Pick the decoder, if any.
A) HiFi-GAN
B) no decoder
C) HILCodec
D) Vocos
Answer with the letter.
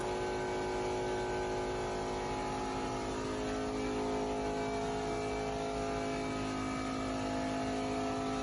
B